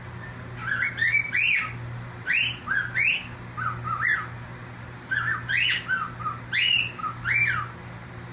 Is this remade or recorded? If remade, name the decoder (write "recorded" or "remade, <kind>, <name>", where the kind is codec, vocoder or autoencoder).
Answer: recorded